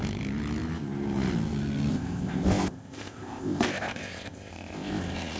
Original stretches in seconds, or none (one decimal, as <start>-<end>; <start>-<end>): 0.0-1.9